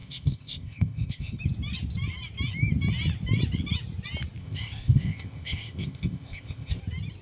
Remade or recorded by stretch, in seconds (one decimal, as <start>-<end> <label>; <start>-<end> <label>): 0.0-1.4 remade; 1.4-4.4 recorded; 4.4-6.8 remade; 6.8-7.2 recorded